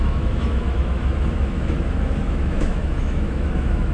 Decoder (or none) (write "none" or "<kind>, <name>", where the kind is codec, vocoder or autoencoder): autoencoder, DAC-VAE